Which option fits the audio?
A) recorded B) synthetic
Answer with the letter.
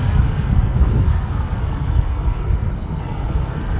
B